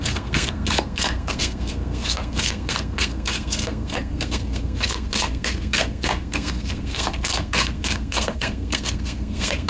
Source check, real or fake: fake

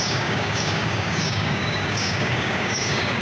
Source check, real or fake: fake